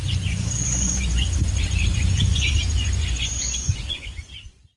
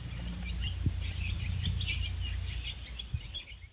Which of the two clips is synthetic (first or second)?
first